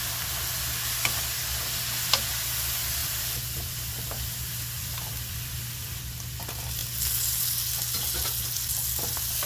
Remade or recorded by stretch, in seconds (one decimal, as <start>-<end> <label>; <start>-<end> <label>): 0.0-3.0 recorded; 3.0-6.0 remade; 6.0-9.5 recorded